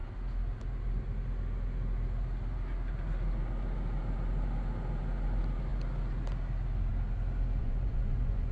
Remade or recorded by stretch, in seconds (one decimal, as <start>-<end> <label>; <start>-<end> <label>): 0.0-7.6 recorded; 7.6-8.5 remade